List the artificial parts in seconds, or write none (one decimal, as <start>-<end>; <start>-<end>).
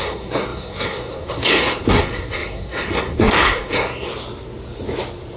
0.0-4.1